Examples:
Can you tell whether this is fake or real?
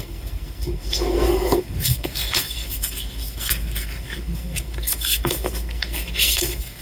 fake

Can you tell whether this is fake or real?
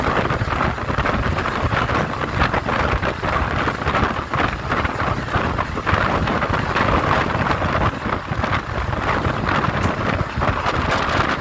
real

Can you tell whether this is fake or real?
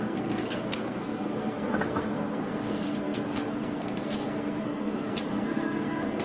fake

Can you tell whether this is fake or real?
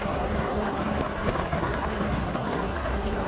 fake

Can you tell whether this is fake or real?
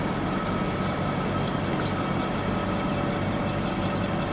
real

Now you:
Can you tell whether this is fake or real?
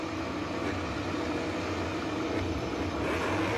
real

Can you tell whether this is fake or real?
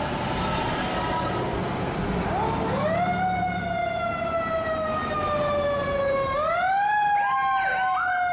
real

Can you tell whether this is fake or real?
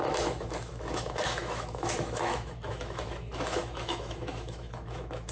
fake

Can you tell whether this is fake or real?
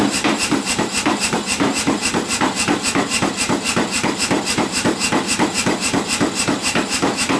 fake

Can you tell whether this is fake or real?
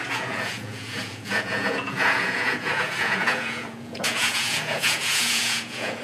fake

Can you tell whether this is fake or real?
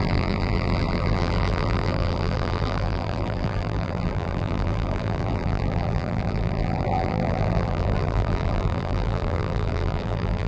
fake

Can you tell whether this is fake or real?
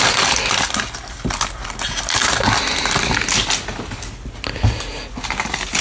real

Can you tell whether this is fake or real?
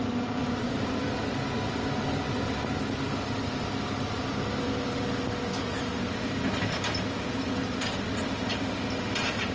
real